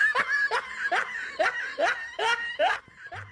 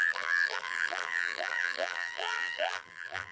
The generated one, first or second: second